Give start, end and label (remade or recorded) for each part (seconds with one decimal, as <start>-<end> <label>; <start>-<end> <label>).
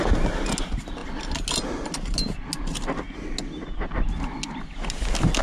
0.0-5.4 recorded